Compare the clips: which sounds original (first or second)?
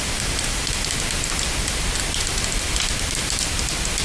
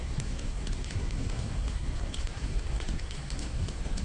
first